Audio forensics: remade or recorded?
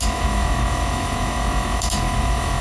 remade